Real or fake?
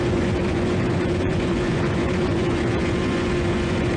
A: fake